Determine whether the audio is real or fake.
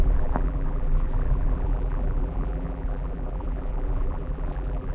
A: fake